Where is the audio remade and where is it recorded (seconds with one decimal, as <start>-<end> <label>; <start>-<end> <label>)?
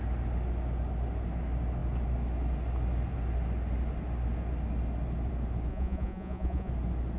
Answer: 0.0-5.7 recorded; 5.7-6.7 remade; 6.7-7.2 recorded